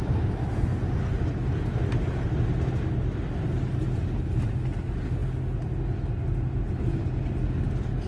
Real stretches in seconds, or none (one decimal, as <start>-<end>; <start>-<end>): 0.0-8.1